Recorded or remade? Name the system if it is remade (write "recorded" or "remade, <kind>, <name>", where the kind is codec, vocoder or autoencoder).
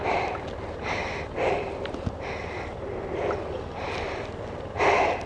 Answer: recorded